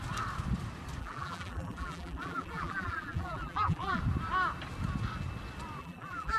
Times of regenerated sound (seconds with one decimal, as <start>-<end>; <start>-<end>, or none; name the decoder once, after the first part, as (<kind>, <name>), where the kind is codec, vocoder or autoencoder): 1.0-4.0 (vocoder, BigVGAN v2); 5.8-6.4